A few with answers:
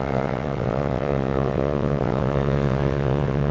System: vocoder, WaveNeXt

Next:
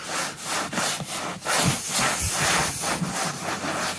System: none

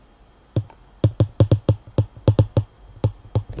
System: none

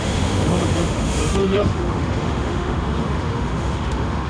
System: autoencoder, DAC-VAE